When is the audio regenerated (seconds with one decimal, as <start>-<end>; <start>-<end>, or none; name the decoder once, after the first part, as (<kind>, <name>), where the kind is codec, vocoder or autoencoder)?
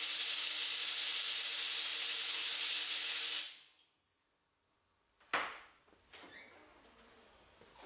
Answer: none